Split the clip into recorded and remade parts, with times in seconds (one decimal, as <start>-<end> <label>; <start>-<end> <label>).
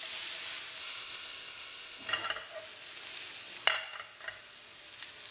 0.0-0.8 recorded; 0.8-2.1 remade; 2.1-5.3 recorded